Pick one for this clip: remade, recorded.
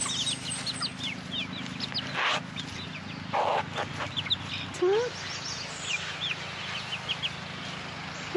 recorded